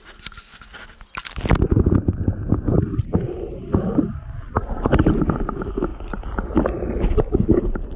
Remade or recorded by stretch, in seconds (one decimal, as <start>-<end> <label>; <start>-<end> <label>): 0.0-5.9 recorded; 5.9-6.8 remade; 6.8-8.0 recorded